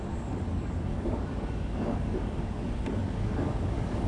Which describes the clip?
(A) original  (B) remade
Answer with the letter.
B